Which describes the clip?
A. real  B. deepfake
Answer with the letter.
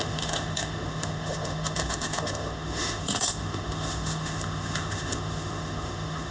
B